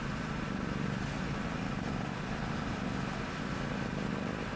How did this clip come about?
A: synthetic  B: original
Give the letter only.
B